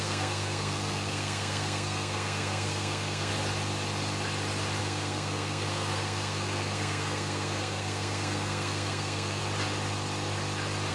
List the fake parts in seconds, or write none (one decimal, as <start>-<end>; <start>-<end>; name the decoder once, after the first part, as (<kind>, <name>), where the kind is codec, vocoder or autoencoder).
0.0-3.3 (codec, SNAC); 4.8-9.4